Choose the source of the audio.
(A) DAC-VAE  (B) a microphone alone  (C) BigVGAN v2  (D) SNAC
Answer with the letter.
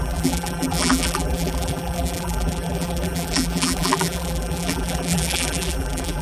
C